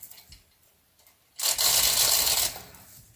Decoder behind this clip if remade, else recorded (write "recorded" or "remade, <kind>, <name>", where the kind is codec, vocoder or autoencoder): recorded